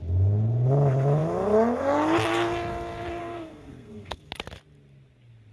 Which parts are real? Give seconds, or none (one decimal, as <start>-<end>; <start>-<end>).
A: 0.0-3.2; 4.2-5.5